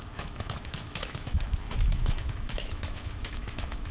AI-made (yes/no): yes